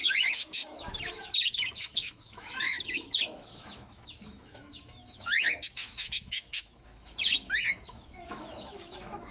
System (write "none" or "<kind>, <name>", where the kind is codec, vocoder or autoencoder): autoencoder, DAC-VAE